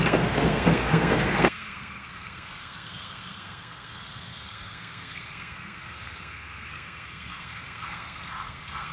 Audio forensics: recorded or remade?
remade